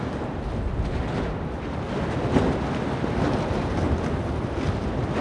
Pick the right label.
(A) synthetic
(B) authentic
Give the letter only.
B